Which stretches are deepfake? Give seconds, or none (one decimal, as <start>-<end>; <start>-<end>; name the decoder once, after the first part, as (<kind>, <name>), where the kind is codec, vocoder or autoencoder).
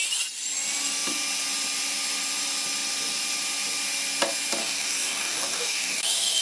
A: 4.6-6.4 (codec, DAC)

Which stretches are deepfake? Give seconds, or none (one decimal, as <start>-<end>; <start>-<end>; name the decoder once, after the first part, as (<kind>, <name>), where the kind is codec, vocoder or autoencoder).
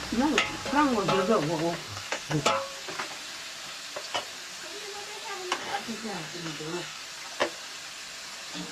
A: 1.8-2.4 (codec, DAC); 5.6-7.0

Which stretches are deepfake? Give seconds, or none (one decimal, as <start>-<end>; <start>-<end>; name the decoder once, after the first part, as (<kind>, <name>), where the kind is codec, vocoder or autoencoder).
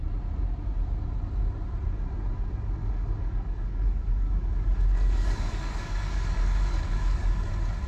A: 2.8-7.5 (codec, DAC)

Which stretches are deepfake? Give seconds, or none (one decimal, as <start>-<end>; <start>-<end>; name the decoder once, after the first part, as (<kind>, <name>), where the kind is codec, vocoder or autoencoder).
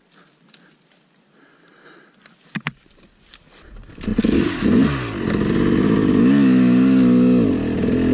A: none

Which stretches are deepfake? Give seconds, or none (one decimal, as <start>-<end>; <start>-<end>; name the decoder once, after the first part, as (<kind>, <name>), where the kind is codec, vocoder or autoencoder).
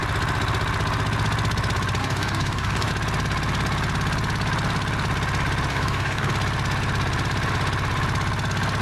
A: 2.0-2.9 (codec, DAC); 5.7-6.3